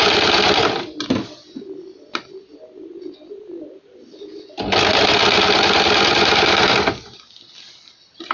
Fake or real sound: real